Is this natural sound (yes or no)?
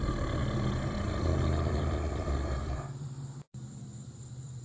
no